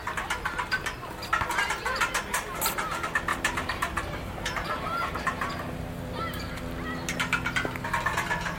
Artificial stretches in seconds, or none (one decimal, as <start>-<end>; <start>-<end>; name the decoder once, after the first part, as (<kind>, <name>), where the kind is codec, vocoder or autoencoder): 3.3-6.6 (vocoder, BigVGAN v2)